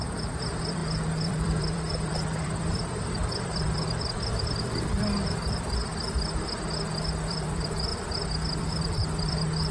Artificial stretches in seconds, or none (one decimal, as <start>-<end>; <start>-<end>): 0.0-5.9; 7.3-7.9; 8.6-9.7